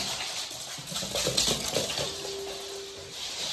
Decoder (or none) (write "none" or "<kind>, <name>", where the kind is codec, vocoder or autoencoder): none